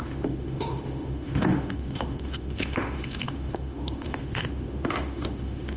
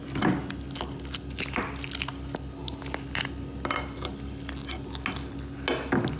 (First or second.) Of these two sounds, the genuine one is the second